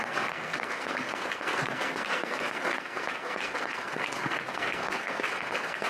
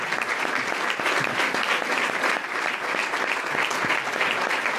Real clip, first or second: second